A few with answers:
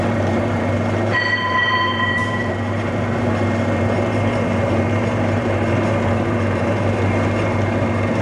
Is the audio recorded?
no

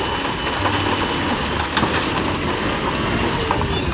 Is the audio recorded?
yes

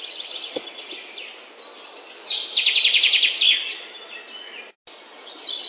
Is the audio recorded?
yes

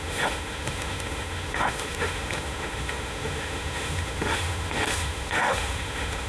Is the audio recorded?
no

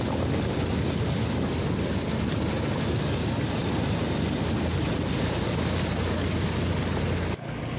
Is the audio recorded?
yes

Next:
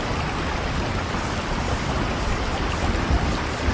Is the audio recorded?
yes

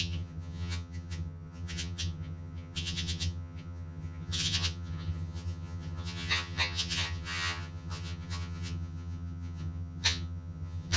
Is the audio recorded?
no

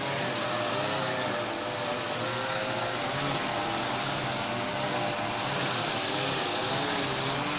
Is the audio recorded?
yes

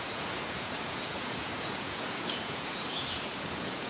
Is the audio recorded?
no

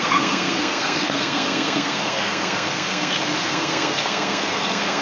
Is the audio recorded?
no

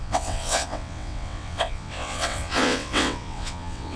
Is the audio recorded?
no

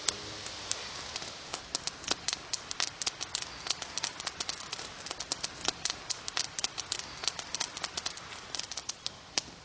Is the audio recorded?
yes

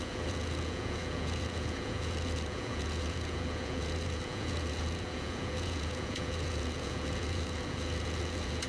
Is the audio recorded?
no